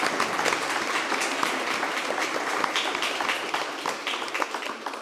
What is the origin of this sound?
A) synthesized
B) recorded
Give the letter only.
B